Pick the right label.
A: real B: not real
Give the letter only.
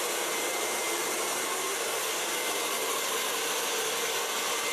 A